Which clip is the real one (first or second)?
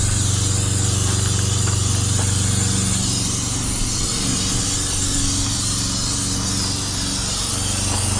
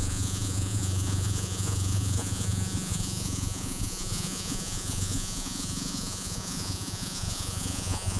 first